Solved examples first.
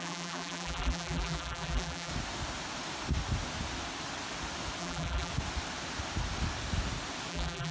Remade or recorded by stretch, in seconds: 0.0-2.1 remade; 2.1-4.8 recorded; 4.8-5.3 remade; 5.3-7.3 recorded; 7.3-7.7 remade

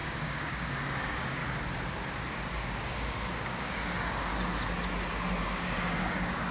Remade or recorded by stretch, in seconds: 0.0-1.4 remade; 1.4-2.8 recorded; 2.8-4.3 remade; 4.3-5.4 recorded; 5.4-6.5 remade